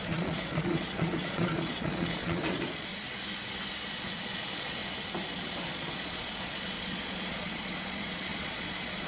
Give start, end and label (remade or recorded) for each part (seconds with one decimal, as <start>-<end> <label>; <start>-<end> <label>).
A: 0.0-2.9 remade; 2.9-3.8 recorded; 3.8-4.8 remade; 4.8-5.3 recorded; 5.3-9.1 remade